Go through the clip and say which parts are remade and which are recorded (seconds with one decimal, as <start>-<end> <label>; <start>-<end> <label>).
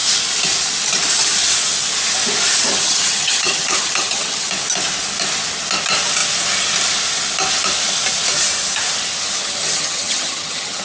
0.0-2.7 recorded; 2.7-4.5 remade; 4.5-9.4 recorded; 9.4-10.8 remade